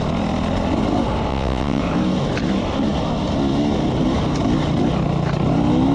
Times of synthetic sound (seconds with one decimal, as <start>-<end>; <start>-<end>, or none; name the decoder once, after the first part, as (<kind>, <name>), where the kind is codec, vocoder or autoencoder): 1.3-1.8 (vocoder, WaveNeXt)